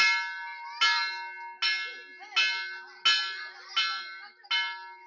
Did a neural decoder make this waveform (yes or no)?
no